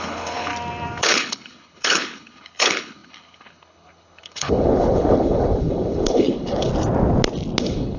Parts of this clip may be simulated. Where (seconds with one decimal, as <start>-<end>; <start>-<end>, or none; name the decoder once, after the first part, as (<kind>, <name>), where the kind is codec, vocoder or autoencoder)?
0.0-0.5 (codec, HILCodec); 1.0-6.7; 7.6-8.0